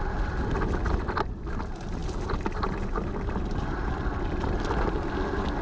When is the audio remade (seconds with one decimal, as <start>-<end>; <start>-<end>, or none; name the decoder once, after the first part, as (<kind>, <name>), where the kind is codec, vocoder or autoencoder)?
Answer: none